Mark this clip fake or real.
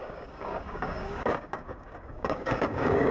fake